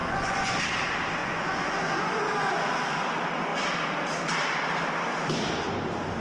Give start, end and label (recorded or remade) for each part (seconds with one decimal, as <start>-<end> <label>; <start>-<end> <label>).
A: 0.0-0.6 remade; 0.6-1.2 recorded; 1.2-2.6 remade; 2.6-6.2 recorded